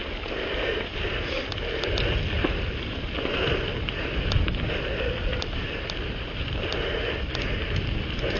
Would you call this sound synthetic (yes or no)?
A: no